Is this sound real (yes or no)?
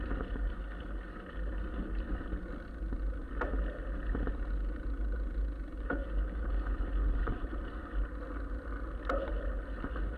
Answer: yes